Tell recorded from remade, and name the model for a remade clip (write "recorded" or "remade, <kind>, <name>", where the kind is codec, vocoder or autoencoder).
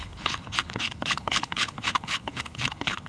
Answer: remade, codec, HILCodec